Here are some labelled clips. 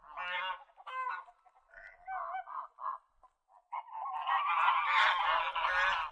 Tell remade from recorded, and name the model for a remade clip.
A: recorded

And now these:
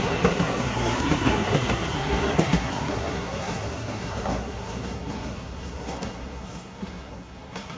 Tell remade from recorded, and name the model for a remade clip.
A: remade, codec, SNAC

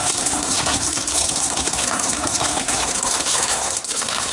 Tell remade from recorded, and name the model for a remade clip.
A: remade, codec, SNAC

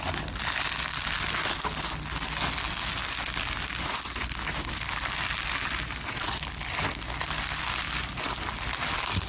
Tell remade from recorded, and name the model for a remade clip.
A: recorded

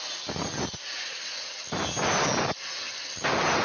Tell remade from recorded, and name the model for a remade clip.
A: recorded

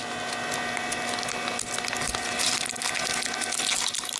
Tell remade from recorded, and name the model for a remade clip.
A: recorded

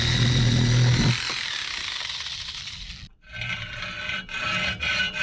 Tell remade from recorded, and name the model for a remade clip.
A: recorded